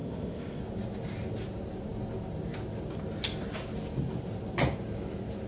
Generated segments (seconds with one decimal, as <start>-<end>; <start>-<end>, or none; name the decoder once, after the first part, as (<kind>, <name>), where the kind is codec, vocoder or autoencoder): 0.0-0.6 (codec, ZipCodec)

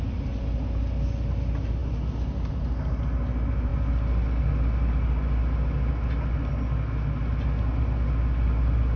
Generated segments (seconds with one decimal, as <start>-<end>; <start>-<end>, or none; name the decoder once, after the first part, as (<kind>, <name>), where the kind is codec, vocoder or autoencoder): none

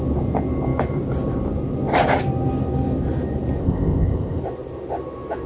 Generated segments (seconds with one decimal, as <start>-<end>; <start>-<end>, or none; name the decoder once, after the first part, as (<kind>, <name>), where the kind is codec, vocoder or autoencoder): 3.6-4.4 (codec, ZipCodec)